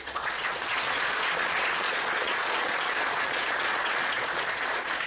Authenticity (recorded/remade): remade